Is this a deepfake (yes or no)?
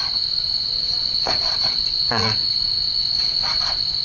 yes